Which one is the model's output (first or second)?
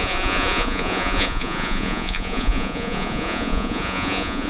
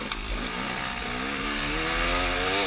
first